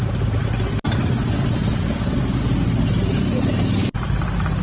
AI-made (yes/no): no